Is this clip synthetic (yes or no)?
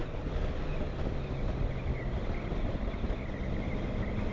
no